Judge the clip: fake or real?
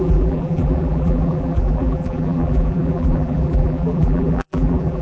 fake